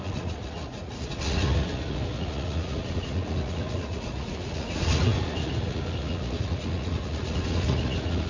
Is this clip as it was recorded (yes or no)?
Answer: no